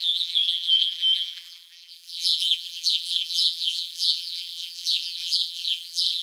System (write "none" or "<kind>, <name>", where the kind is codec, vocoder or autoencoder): vocoder, BigVGAN v2